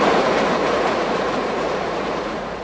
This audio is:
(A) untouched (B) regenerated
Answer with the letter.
B